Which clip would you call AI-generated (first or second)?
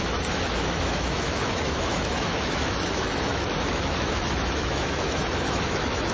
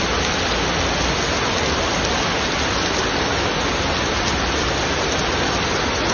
first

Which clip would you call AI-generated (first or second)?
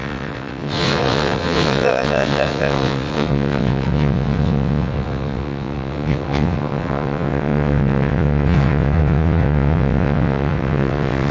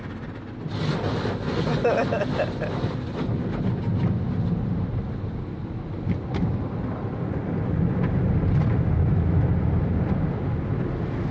first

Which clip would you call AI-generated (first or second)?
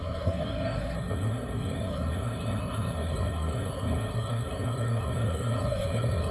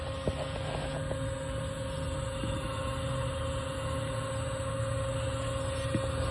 first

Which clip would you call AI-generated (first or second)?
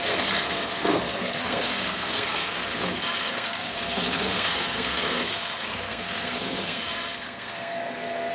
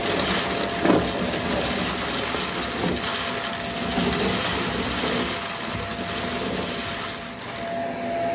first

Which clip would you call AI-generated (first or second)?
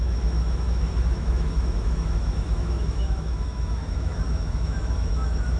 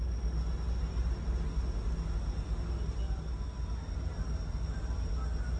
first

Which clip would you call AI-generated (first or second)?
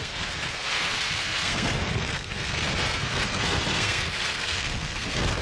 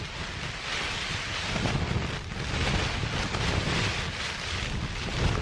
first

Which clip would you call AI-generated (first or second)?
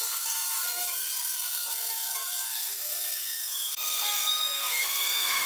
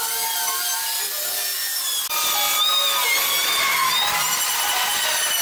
first